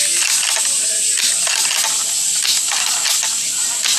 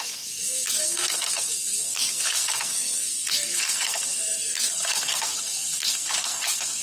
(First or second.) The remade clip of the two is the second